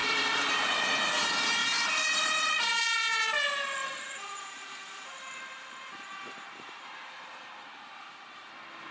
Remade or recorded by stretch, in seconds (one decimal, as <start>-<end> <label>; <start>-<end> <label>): 0.0-1.0 remade; 1.0-1.6 recorded; 1.6-3.0 remade; 3.0-3.8 recorded; 3.8-8.5 remade; 8.5-8.9 recorded